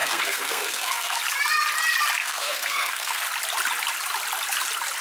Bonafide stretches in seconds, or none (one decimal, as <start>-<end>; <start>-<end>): 1.2-2.2; 3.2-5.0